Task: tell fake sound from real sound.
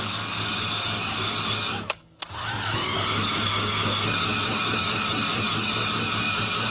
fake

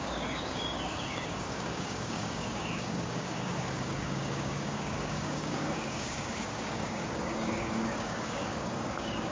fake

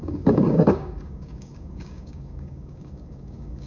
fake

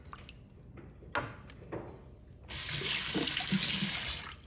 real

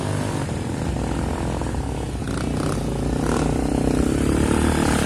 real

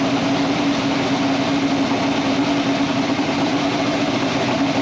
real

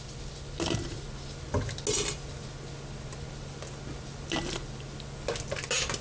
real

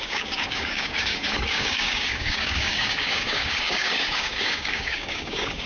fake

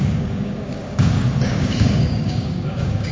fake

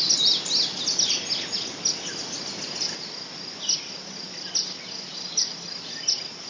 real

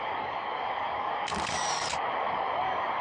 fake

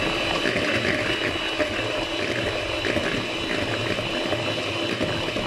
real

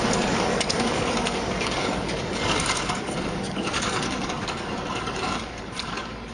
fake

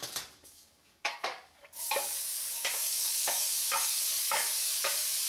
fake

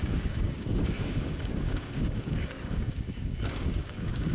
fake